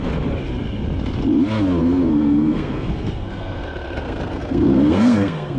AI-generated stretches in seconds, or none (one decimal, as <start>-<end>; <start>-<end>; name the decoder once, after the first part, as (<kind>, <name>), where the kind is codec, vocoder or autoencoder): 1.8-5.6 (codec, SNAC)